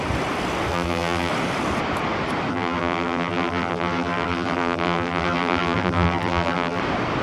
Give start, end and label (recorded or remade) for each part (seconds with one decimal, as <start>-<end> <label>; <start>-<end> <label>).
0.0-0.7 recorded; 0.7-1.3 remade; 1.3-2.5 recorded; 2.5-6.8 remade; 6.8-7.2 recorded